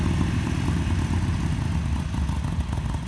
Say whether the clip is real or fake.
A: real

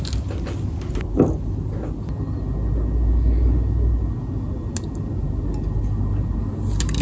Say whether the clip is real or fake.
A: real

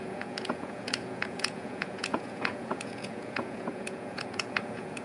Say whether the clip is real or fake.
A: fake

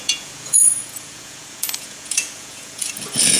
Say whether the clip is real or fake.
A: fake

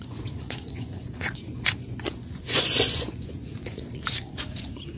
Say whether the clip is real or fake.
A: fake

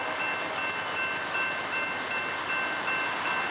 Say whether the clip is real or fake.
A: real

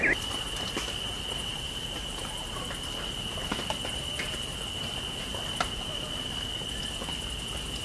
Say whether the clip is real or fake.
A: real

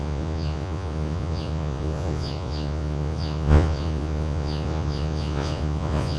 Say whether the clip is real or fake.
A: fake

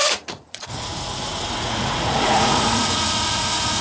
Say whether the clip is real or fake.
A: fake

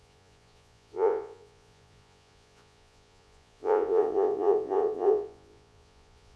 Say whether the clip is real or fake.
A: fake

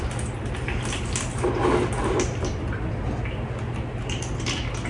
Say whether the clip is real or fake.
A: real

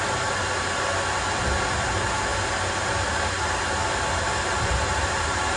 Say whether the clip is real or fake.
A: real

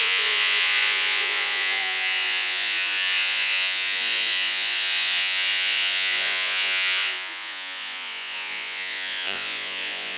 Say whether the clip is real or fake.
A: fake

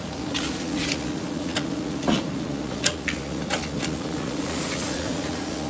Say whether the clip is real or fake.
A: fake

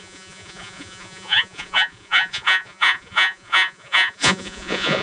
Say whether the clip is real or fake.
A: fake